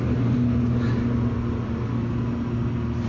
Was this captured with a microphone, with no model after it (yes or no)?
yes